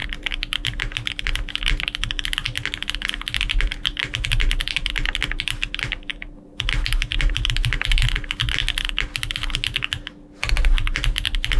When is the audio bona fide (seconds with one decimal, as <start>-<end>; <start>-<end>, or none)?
0.0-11.6